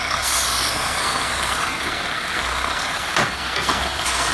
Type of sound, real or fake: fake